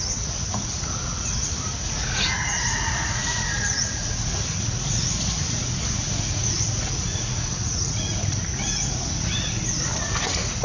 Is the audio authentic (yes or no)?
no